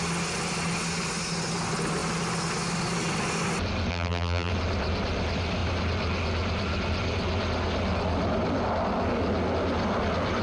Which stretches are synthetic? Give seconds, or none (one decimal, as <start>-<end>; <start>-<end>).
3.9-4.5